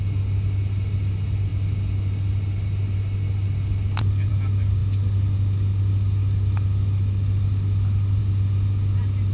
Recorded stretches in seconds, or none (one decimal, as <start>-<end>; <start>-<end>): 0.0-9.3